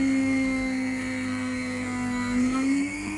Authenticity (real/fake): fake